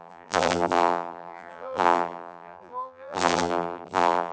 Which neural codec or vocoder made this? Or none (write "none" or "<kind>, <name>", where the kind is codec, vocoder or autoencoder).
vocoder, BigVGAN v2